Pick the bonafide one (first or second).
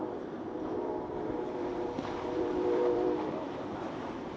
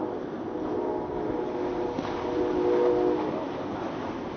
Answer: second